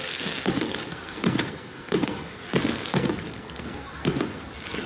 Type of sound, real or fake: fake